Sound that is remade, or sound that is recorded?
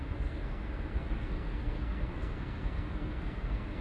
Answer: remade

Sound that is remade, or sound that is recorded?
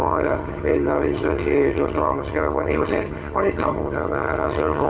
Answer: remade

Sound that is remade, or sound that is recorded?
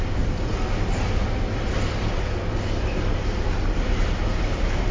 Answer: remade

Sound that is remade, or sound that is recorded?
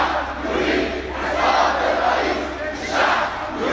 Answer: recorded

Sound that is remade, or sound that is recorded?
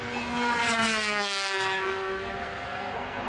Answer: remade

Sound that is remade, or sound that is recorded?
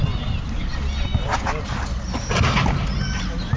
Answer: recorded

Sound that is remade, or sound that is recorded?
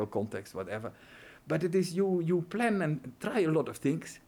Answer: recorded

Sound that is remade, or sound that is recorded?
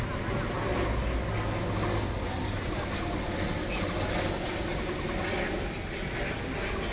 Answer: recorded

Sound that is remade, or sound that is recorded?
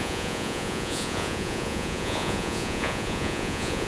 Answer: remade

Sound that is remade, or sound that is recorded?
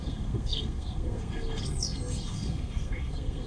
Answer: remade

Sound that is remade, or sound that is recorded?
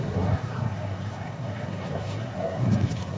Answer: remade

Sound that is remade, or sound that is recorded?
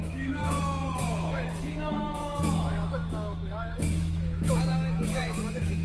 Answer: remade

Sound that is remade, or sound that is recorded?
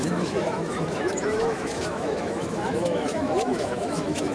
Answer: remade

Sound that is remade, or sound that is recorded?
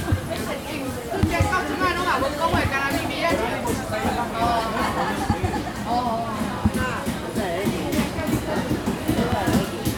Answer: recorded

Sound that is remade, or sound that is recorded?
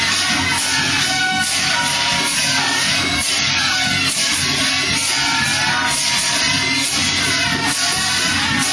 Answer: recorded